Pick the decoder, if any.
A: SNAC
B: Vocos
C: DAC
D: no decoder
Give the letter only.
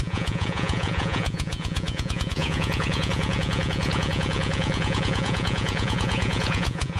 B